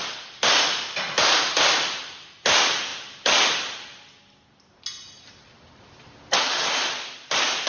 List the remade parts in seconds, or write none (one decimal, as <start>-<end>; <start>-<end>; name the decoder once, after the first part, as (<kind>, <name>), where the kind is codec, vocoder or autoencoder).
0.0-2.9 (vocoder, BigVGAN v2); 5.2-7.7